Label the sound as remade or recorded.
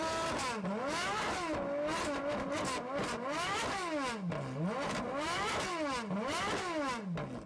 recorded